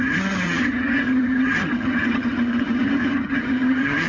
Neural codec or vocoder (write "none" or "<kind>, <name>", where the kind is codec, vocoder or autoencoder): vocoder, HiFi-GAN